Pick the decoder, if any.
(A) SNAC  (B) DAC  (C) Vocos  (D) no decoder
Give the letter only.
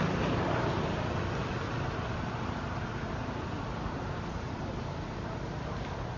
D